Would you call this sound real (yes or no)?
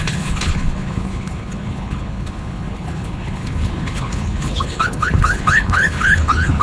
no